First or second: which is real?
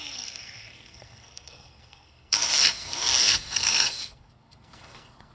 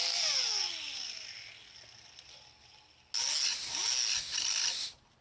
second